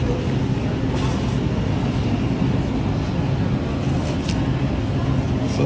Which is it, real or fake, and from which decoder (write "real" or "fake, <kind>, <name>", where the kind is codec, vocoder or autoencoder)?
real